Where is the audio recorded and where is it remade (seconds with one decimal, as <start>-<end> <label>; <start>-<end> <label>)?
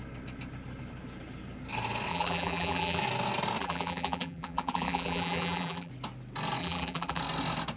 0.0-2.1 recorded; 2.1-3.0 remade; 3.0-3.6 recorded; 3.6-5.9 remade; 5.9-6.6 recorded; 6.6-7.2 remade; 7.2-7.8 recorded